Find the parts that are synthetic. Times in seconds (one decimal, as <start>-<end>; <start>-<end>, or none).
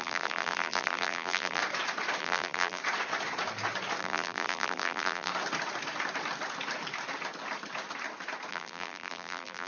0.0-1.6; 2.2-2.8; 4.0-5.3; 8.5-9.7